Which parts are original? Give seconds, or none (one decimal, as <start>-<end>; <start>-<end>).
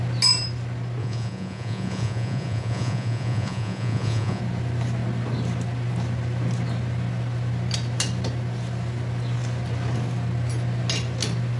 0.0-1.0; 4.4-11.6